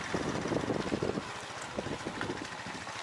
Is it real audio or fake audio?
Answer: real